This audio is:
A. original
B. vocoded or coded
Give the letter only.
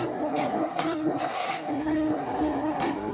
B